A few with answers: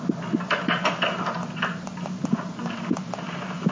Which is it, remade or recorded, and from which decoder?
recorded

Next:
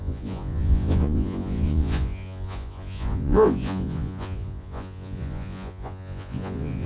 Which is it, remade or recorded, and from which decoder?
remade, vocoder, Vocos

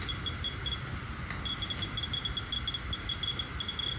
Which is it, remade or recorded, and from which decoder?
recorded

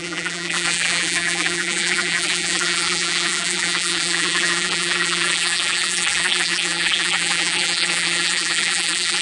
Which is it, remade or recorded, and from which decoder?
remade, vocoder, BigVGAN v2